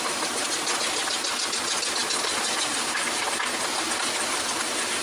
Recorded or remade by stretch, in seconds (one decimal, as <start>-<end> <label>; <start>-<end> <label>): 0.0-5.0 recorded

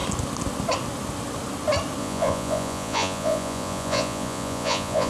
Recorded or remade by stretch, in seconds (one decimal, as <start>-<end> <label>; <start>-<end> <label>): 0.0-2.0 recorded; 2.0-5.1 remade

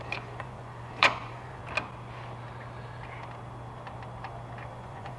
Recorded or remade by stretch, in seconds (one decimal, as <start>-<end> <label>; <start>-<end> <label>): 0.0-1.6 remade; 1.6-4.7 recorded; 4.7-5.2 remade

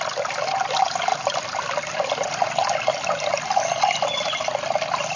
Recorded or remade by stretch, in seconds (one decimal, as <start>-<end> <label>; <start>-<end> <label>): 0.0-5.2 recorded

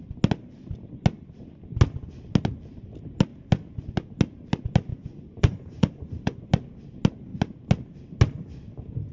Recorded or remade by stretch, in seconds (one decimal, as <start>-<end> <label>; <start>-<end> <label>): 0.0-4.9 recorded; 4.9-6.5 remade; 6.5-9.1 recorded

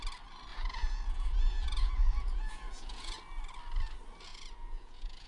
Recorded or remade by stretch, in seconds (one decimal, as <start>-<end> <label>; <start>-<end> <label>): 0.0-0.5 recorded; 0.5-3.2 remade; 3.2-4.3 recorded; 4.3-5.3 remade

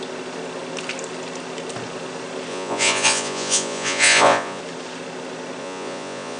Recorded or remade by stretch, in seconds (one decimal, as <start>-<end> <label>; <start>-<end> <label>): 0.0-2.5 recorded; 2.5-4.6 remade; 4.6-5.6 recorded; 5.6-6.4 remade

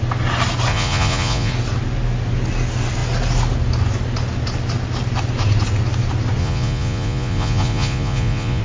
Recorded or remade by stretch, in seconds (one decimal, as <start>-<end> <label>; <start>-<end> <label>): 0.0-0.7 recorded; 0.7-1.5 remade; 1.5-6.4 recorded; 6.4-8.6 remade